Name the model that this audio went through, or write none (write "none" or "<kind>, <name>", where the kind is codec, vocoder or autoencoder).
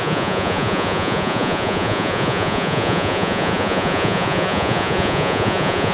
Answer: vocoder, Vocos